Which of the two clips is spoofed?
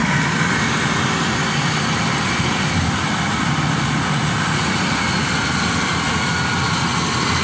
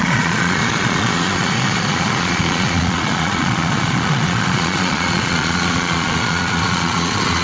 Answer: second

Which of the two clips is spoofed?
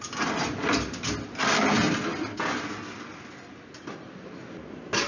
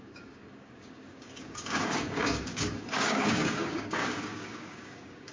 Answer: second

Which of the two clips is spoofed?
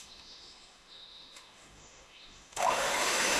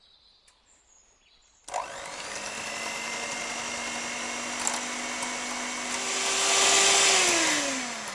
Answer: first